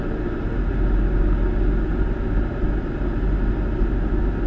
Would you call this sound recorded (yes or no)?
yes